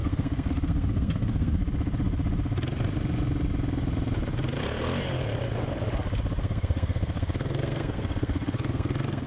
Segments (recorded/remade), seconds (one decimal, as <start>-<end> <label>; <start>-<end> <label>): 0.0-1.6 remade; 1.6-6.4 recorded; 6.4-9.3 remade